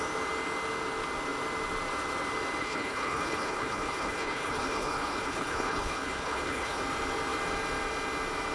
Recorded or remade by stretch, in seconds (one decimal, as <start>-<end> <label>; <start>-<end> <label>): 0.0-2.6 recorded; 2.6-6.8 remade; 6.8-8.5 recorded